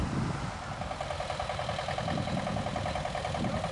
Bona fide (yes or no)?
yes